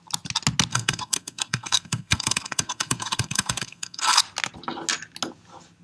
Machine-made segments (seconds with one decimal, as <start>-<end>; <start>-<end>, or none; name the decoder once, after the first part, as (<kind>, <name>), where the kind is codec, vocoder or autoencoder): 0.7-4.2 (codec, SNAC)